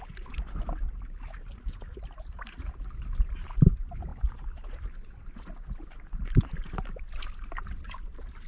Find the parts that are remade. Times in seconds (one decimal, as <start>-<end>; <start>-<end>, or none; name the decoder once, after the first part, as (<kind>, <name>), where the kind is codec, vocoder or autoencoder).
none